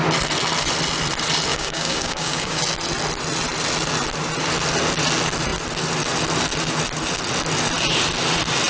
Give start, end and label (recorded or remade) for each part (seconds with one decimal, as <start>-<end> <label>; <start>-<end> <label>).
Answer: 0.0-1.5 recorded; 1.5-2.6 remade; 2.6-8.7 recorded